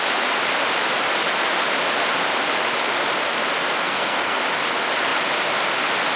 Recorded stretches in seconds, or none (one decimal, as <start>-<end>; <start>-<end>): 0.0-3.8; 4.4-6.2